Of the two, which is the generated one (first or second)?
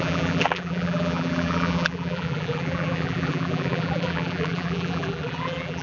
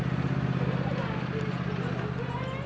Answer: first